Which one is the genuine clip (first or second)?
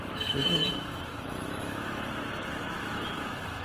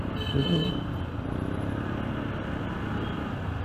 second